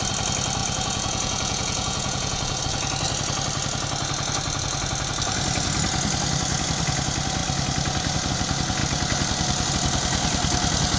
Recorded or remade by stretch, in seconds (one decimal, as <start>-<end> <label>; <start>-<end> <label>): 0.0-0.6 recorded; 0.6-2.6 remade; 2.6-11.0 recorded